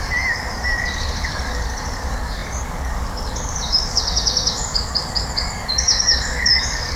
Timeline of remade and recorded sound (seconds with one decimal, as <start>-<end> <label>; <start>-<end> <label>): 0.0-7.0 remade